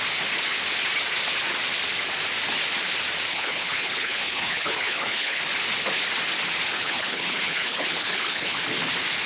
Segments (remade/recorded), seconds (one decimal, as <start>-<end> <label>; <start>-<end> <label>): 0.0-3.3 recorded; 3.3-5.4 remade; 5.4-6.7 recorded; 6.7-8.6 remade; 8.6-9.3 recorded